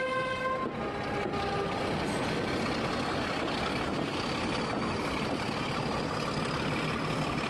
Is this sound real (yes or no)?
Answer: yes